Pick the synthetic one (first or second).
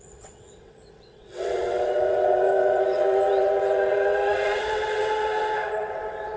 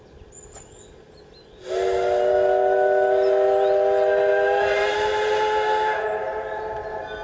first